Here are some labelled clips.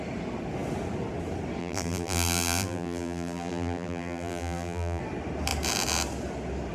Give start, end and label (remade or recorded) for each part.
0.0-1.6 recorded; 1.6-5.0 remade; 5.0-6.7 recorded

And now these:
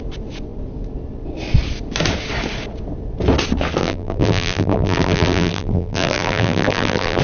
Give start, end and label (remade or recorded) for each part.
0.0-3.8 recorded; 3.8-7.2 remade

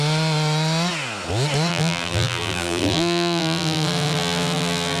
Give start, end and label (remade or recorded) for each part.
0.0-1.7 recorded; 1.7-5.0 remade

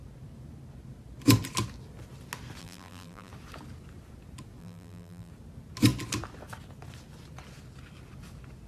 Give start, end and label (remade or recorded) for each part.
0.0-2.6 recorded; 2.6-3.3 remade; 3.3-4.6 recorded; 4.6-5.3 remade; 5.3-8.7 recorded

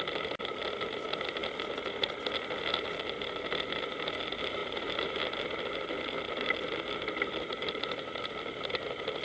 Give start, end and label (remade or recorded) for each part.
0.0-4.6 recorded; 4.6-5.2 remade; 5.2-7.5 recorded; 7.5-8.1 remade; 8.1-9.2 recorded

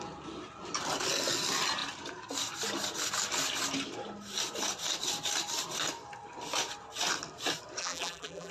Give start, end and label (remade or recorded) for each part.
0.0-7.8 recorded; 7.8-8.5 remade